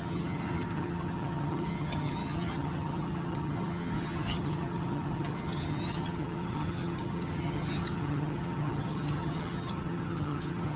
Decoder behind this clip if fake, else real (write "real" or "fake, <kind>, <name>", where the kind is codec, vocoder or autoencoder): fake, vocoder, HiFi-GAN